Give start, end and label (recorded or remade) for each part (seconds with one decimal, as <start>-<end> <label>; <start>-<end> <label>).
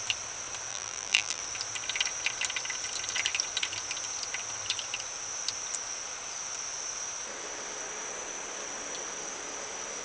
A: 0.0-0.7 recorded; 0.7-1.4 remade; 1.4-10.0 recorded